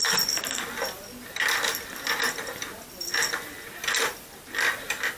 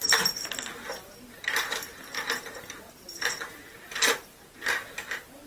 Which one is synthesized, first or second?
second